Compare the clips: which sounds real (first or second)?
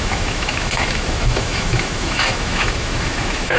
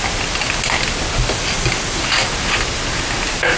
second